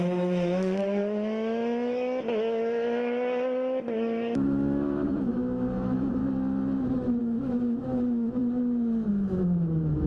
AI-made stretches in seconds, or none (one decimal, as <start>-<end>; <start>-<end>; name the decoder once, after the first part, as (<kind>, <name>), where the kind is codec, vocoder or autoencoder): 0.0-6.2 (autoencoder, DAC-VAE); 7.2-8.4; 9.1-10.1